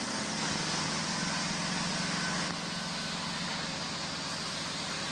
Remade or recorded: recorded